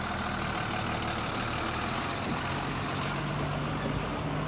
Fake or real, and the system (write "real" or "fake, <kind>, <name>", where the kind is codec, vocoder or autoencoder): real